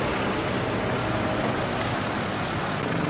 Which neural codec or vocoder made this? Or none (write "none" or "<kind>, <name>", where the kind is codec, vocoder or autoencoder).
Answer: none